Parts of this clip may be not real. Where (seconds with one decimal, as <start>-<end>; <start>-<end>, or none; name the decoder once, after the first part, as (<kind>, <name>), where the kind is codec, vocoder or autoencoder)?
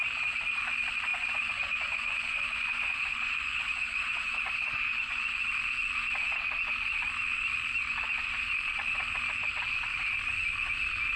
1.1-5.4 (vocoder, Vocos)